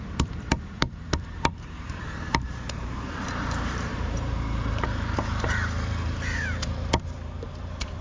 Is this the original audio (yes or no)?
no